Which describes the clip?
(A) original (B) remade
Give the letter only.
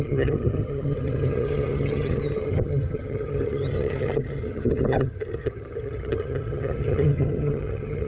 B